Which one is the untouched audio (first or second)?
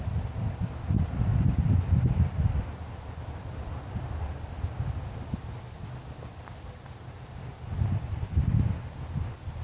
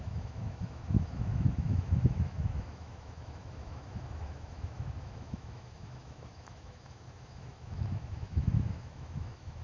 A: first